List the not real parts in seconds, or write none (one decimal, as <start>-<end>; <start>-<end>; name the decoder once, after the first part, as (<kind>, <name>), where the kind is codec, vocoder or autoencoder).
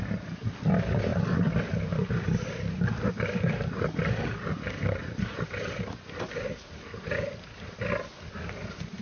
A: none